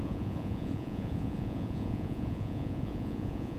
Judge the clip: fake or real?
fake